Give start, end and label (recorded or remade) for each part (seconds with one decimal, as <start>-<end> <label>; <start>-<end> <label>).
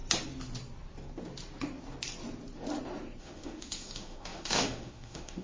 0.0-3.2 recorded; 3.2-5.4 remade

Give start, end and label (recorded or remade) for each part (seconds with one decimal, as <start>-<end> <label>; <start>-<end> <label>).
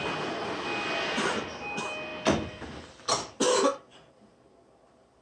0.0-5.2 recorded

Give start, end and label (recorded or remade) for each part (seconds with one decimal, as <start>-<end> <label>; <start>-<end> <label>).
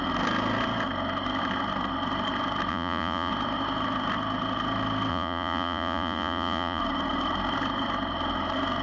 0.0-2.7 recorded; 2.7-3.3 remade; 3.3-5.1 recorded; 5.1-6.8 remade; 6.8-8.8 recorded